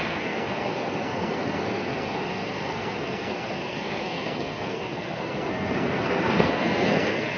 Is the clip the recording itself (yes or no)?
no